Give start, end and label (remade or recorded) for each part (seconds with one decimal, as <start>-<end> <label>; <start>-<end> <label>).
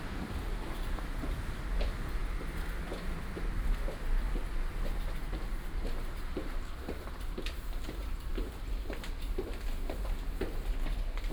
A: 0.0-5.2 recorded; 5.2-8.3 remade; 8.3-11.3 recorded